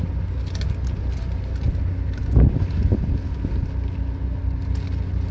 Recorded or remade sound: recorded